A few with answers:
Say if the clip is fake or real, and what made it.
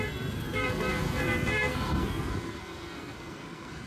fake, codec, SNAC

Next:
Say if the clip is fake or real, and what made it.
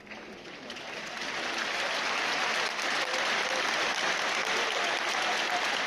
real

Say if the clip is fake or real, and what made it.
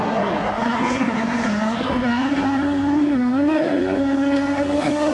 fake, codec, SNAC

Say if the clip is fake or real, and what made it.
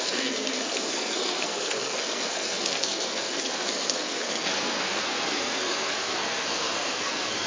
fake, codec, SNAC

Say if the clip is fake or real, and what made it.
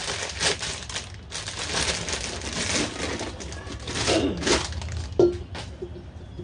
real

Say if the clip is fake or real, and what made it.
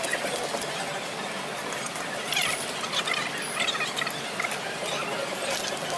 real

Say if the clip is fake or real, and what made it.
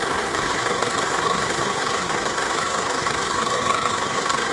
fake, codec, SNAC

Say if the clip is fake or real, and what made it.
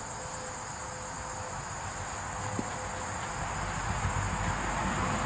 real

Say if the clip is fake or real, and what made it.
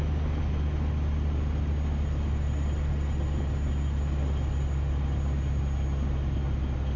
real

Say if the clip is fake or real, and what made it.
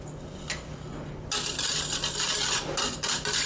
real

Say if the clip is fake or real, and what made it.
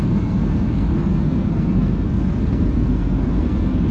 fake, codec, SNAC